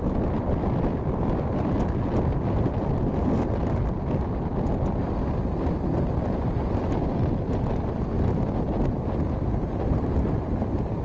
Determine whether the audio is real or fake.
real